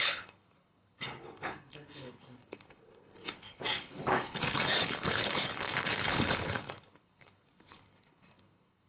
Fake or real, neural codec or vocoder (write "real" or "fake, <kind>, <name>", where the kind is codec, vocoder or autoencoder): fake, codec, HILCodec